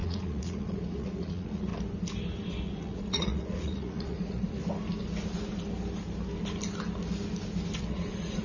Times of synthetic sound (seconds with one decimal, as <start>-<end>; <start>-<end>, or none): 0.0-1.7; 2.6-4.6; 7.8-8.4